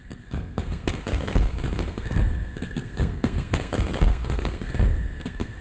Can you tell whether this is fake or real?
fake